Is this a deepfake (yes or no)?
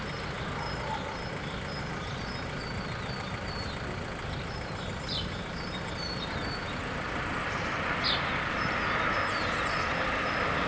no